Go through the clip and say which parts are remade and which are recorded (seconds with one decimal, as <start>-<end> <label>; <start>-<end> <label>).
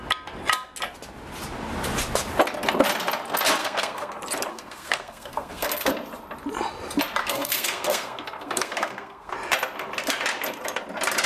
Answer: 0.0-3.6 recorded; 3.6-4.1 remade; 4.1-4.5 recorded; 4.5-5.9 remade; 5.9-7.2 recorded; 7.2-9.3 remade; 9.3-11.3 recorded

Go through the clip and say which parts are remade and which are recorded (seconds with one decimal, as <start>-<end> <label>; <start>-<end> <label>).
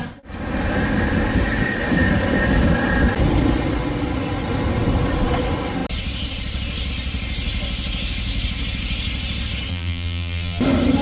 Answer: 0.0-9.7 recorded; 9.7-10.6 remade; 10.6-11.0 recorded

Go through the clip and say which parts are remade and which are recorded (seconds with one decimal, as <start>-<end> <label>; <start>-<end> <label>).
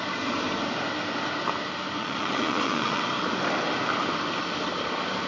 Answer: 0.0-2.0 recorded; 2.0-3.0 remade; 3.0-5.3 recorded